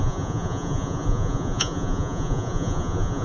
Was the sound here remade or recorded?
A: remade